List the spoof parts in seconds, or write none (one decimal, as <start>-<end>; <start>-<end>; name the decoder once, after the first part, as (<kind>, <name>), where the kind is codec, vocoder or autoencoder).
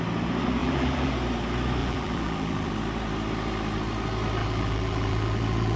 0.6-1.1 (vocoder, BigVGAN v2); 1.8-2.7; 4.4-5.8